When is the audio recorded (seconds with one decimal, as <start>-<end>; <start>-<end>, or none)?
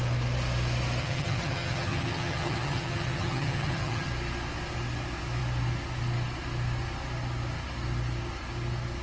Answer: 0.0-1.0; 4.1-9.0